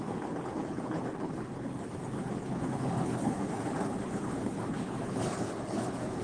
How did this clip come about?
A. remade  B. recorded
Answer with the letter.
A